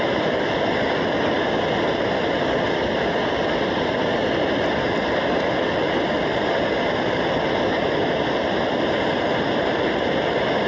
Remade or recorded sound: recorded